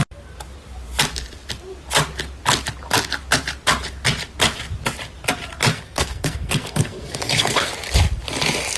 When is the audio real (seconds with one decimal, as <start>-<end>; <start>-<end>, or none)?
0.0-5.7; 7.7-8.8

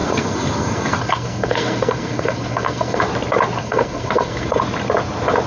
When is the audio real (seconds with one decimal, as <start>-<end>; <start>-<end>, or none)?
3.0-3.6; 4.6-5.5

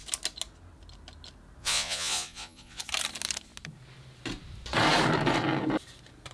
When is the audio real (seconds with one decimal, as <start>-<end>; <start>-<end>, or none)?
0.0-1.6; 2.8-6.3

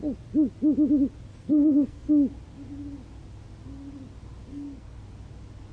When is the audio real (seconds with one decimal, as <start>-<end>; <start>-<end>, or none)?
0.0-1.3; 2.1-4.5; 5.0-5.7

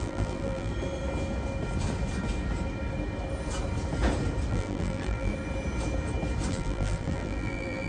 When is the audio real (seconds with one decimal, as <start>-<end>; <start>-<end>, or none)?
0.7-4.5; 5.3-6.5